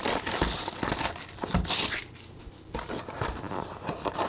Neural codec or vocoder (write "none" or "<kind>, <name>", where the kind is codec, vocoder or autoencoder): none